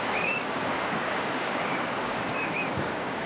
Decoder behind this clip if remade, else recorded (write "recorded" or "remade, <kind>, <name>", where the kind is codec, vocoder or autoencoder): remade, codec, DAC